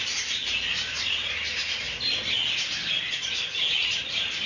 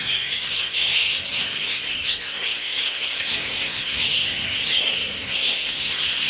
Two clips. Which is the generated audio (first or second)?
second